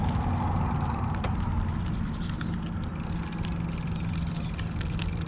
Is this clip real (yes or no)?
yes